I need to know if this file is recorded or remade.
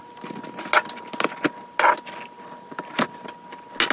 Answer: recorded